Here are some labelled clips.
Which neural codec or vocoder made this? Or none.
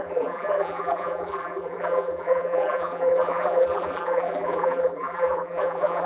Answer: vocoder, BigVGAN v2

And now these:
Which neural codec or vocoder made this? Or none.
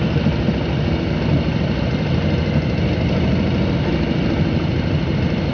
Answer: none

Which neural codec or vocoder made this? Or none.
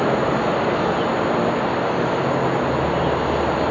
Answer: none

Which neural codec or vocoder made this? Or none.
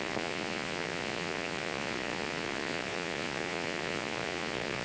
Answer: vocoder, Vocos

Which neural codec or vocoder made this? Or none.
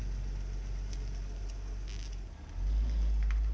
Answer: none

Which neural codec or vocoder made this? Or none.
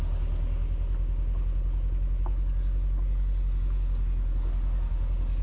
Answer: none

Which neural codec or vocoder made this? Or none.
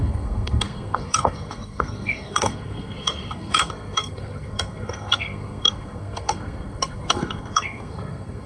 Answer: codec, SNAC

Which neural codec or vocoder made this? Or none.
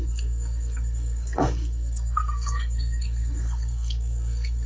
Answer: codec, SNAC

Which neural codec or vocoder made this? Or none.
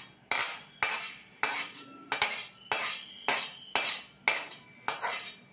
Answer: none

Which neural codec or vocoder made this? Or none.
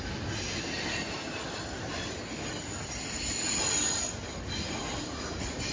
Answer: none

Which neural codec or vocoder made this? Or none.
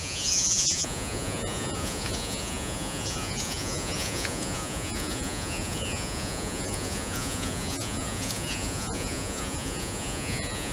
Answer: vocoder, Vocos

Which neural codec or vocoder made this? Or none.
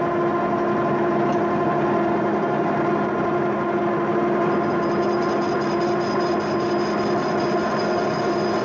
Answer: none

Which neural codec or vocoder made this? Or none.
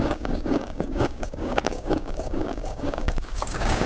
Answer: codec, DAC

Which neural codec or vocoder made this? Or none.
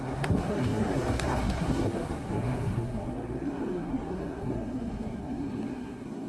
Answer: codec, SNAC